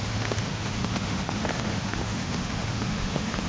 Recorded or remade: remade